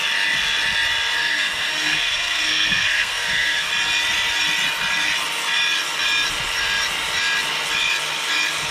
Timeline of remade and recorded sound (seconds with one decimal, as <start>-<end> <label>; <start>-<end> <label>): 0.0-1.2 recorded; 1.2-3.7 remade; 3.7-8.7 recorded